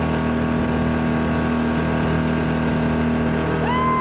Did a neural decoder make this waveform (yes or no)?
no